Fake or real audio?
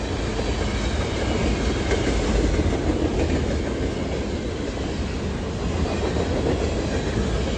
real